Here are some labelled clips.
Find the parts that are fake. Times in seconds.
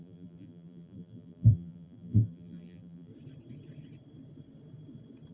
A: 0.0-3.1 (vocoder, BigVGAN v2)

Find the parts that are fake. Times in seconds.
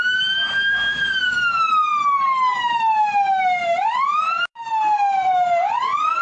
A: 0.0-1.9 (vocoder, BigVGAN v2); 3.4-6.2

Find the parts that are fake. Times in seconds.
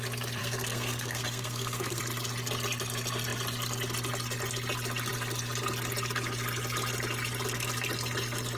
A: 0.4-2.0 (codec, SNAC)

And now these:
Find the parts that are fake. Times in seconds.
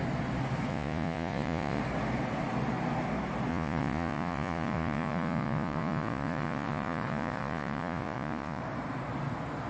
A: 0.7-1.8 (vocoder, Vocos); 3.5-8.6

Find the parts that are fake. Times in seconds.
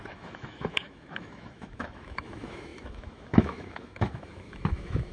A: 0.0-5.1 (autoencoder, DAC-VAE)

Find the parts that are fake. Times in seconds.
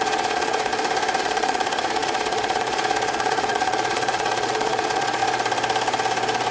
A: 0.0-0.7 (vocoder, Vocos); 1.2-5.2